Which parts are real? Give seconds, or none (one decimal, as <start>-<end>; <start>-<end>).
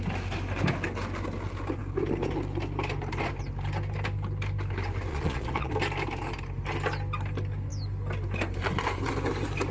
0.0-5.1; 5.7-9.7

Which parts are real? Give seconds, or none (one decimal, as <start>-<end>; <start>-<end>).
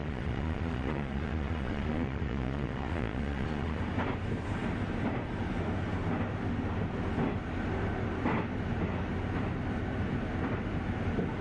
3.8-11.4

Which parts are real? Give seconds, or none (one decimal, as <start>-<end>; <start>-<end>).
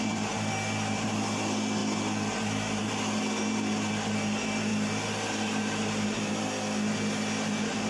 0.0-7.9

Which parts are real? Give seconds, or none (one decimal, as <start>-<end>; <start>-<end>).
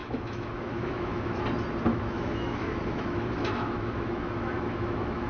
1.4-1.9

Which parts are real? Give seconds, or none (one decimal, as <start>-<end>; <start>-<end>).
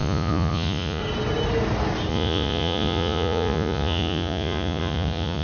1.0-2.1